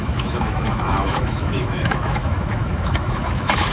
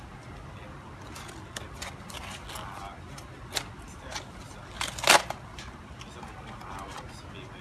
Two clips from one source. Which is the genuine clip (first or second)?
second